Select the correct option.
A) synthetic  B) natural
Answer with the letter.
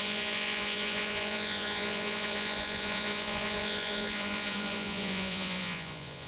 A